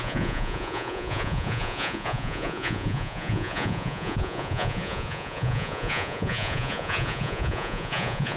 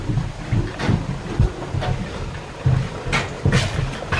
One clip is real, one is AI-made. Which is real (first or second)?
second